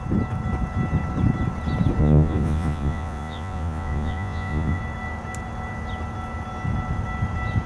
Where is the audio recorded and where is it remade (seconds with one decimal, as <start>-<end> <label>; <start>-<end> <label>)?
0.0-2.0 recorded; 2.0-4.8 remade; 4.8-7.7 recorded